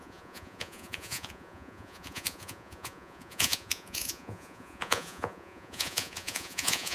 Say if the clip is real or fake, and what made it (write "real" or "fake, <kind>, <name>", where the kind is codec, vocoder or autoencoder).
fake, vocoder, Vocos